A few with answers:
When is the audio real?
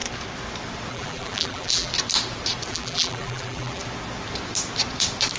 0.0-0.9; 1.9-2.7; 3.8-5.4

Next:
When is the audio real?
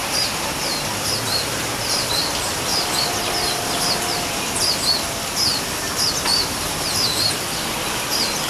2.1-2.7; 4.0-6.3; 7.3-8.5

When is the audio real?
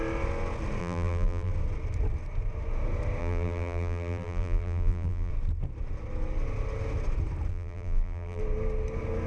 0.0-0.8; 1.5-3.2; 5.3-7.5; 8.4-9.3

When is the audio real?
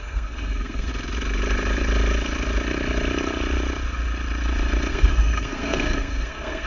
0.9-4.9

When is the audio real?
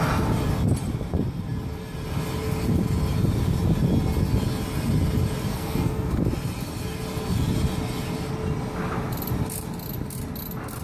0.0-5.5; 6.2-10.8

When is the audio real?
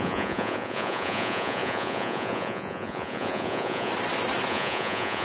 3.9-4.5